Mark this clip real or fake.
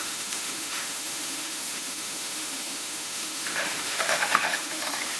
fake